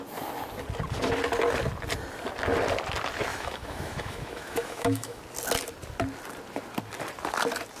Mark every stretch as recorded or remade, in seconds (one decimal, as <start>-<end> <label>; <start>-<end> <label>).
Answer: 0.0-3.3 recorded; 3.3-5.2 remade; 5.2-7.8 recorded